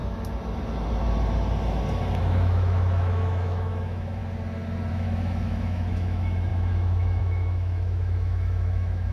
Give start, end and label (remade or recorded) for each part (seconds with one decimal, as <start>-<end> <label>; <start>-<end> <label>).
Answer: 0.0-2.2 recorded; 2.2-4.2 remade; 4.2-4.9 recorded; 4.9-9.1 remade